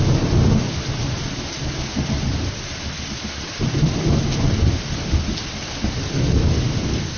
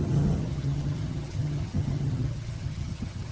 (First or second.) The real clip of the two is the first